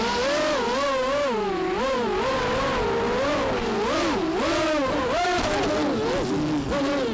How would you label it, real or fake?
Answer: real